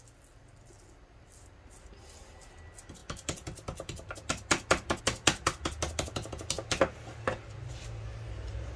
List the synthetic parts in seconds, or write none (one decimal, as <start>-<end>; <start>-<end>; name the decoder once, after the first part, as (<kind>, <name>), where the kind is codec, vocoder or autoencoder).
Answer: none